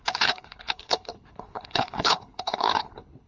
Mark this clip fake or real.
fake